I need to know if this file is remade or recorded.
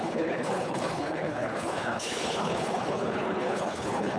remade